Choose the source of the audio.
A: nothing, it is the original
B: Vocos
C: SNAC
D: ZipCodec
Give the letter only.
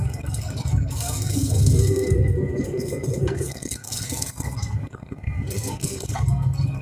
C